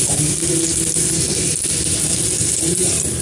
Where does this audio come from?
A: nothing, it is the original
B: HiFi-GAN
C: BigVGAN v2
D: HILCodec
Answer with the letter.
A